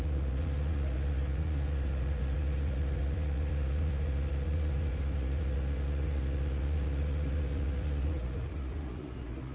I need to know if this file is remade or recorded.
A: remade